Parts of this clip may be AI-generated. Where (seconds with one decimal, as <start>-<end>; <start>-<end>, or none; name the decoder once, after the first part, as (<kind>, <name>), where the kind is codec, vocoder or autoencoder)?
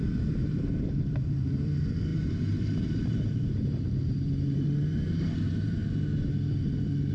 0.0-5.8 (vocoder, BigVGAN v2); 6.5-7.1